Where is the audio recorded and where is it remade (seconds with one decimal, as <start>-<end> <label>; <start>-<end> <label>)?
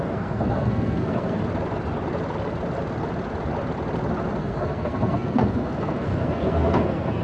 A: 0.0-1.4 remade; 1.4-4.4 recorded; 4.4-7.2 remade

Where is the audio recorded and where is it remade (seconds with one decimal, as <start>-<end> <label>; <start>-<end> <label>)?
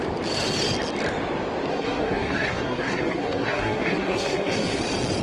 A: 0.0-1.7 recorded; 1.7-4.8 remade; 4.8-5.2 recorded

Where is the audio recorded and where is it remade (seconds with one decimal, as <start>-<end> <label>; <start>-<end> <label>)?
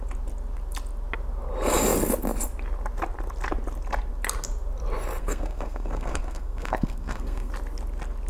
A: 0.0-5.2 recorded; 5.2-7.5 remade; 7.5-8.3 recorded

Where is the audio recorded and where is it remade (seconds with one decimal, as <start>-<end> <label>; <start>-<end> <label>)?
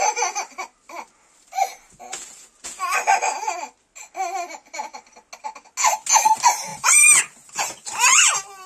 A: 0.0-8.7 recorded